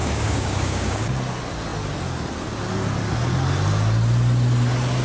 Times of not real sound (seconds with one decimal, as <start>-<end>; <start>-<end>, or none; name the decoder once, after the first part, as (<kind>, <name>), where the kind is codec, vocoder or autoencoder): 0.0-1.1 (codec, DAC)